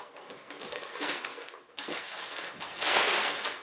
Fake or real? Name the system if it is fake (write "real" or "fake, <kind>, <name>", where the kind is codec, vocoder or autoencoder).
fake, codec, SNAC